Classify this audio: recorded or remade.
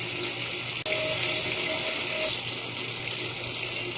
recorded